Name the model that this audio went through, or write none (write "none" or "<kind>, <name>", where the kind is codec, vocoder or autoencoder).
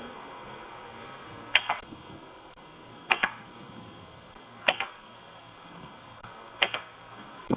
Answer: codec, SNAC